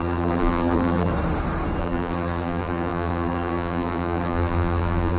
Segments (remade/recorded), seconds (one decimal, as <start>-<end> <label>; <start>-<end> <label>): 0.0-1.1 remade; 1.1-1.8 recorded; 1.8-5.2 remade